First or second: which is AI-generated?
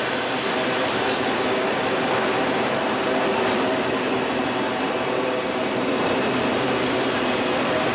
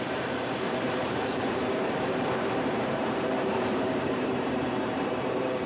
second